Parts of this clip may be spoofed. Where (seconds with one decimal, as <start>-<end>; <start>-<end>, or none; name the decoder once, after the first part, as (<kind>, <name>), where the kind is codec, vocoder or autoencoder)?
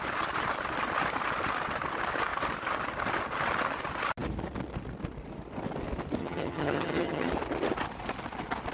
6.2-7.3 (vocoder, HiFi-GAN)